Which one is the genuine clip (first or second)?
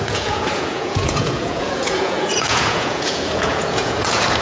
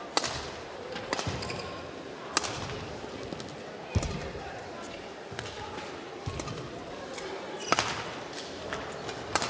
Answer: second